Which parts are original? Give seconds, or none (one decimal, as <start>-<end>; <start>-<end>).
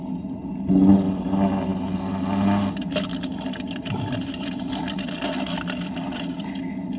0.0-7.0